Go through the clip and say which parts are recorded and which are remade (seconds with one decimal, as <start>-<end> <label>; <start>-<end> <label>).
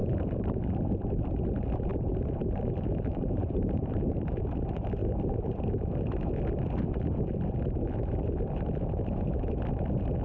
0.0-0.6 remade; 0.6-1.9 recorded; 1.9-4.4 remade; 4.4-10.2 recorded